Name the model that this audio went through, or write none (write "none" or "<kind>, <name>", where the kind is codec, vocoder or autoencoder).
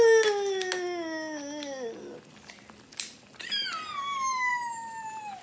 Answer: none